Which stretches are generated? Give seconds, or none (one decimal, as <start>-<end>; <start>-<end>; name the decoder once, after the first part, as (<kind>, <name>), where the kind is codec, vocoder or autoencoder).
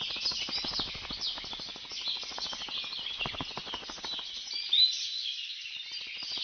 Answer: 1.7-2.4 (vocoder, Vocos)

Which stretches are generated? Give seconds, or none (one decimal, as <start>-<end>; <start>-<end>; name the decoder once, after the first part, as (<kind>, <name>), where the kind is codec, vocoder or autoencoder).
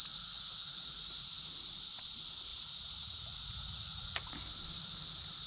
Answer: 0.6-1.4 (vocoder, Vocos); 2.5-4.3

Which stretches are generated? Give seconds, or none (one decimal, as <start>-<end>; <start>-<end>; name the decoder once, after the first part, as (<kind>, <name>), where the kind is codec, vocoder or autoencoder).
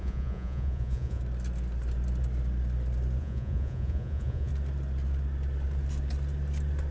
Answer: 0.0-1.2 (vocoder, Vocos); 3.2-4.5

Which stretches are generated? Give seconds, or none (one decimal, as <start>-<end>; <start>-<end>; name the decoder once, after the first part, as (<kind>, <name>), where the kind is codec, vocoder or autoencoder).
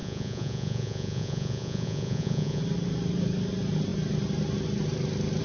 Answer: 0.0-2.6 (vocoder, Vocos)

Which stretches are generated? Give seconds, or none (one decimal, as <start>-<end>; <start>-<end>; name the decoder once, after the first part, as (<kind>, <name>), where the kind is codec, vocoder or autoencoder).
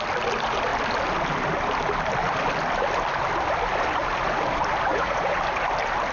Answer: 4.9-5.4 (vocoder, Vocos)